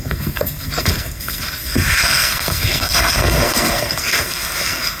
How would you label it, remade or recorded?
remade